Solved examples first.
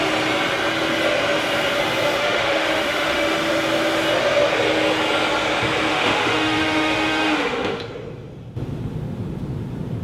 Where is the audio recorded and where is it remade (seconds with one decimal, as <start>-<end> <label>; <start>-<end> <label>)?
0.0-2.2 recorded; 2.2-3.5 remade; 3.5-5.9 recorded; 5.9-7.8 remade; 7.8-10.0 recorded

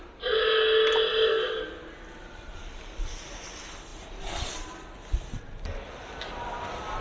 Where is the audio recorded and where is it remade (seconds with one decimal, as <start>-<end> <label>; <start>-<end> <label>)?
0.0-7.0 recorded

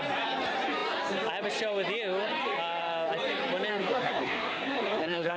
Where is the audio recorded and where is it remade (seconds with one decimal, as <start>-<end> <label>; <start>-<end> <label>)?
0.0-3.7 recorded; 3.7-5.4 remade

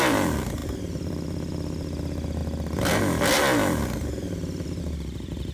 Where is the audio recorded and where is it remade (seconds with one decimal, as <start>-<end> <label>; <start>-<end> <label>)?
0.0-2.4 remade; 2.4-4.8 recorded; 4.8-5.5 remade

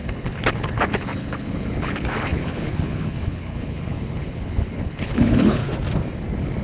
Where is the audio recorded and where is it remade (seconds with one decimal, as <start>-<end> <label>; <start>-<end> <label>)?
0.0-5.6 remade; 5.6-6.6 recorded